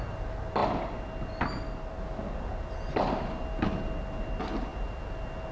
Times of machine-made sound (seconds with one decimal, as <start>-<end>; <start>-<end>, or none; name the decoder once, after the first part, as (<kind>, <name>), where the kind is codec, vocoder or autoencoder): none